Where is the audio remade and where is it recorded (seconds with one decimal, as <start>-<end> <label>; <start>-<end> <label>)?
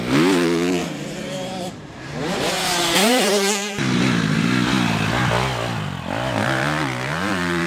0.0-0.8 recorded; 0.8-3.8 remade; 3.8-6.4 recorded; 6.4-7.7 remade